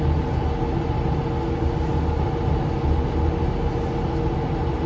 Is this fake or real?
real